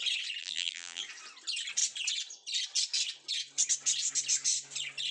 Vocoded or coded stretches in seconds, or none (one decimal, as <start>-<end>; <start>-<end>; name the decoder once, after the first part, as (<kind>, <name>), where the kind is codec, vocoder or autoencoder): 0.4-1.0 (vocoder, BigVGAN v2)